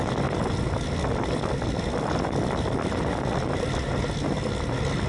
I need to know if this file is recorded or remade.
recorded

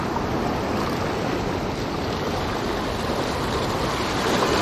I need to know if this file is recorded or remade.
recorded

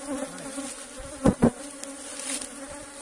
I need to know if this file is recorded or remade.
recorded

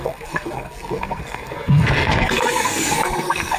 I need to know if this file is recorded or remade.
remade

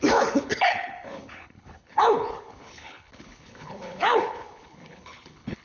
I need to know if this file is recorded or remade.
remade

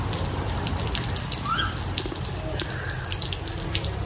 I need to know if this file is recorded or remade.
recorded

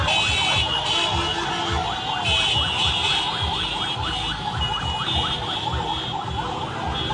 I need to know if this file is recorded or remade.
recorded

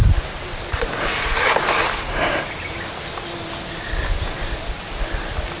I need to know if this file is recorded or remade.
recorded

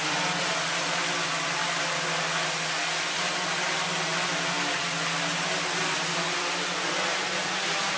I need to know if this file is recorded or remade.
recorded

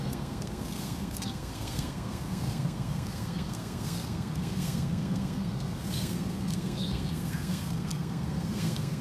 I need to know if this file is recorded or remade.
remade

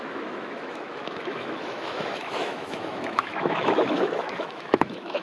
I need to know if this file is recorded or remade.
remade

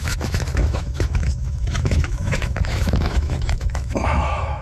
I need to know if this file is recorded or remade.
remade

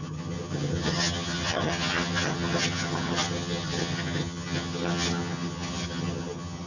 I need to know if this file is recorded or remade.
remade